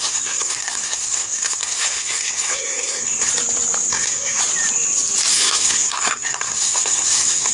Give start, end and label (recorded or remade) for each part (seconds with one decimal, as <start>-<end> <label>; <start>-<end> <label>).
0.0-3.3 remade; 3.3-3.9 recorded; 3.9-4.4 remade; 4.4-5.3 recorded; 5.3-7.5 remade